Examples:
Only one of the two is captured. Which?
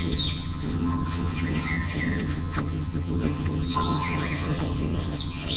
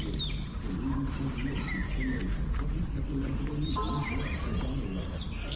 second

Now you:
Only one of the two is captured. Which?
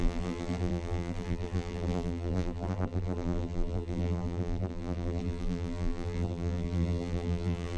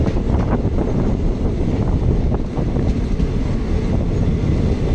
second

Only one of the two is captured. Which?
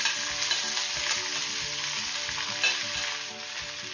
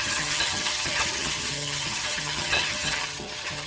first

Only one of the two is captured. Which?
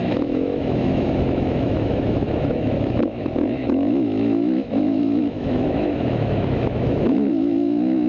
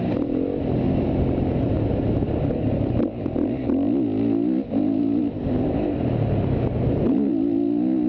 second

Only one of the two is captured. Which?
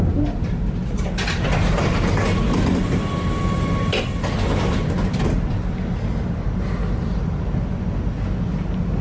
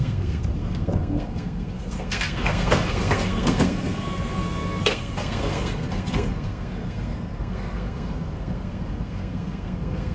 first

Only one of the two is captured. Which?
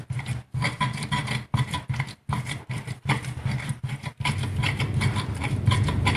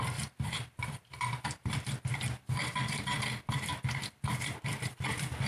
first